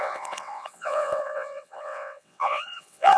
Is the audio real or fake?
fake